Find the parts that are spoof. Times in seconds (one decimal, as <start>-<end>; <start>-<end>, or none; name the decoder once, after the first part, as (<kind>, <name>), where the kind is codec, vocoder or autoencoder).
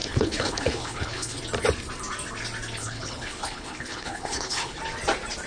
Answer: 0.0-1.4 (codec, HILCodec); 2.8-4.8